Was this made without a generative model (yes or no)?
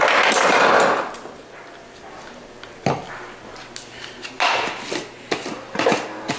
yes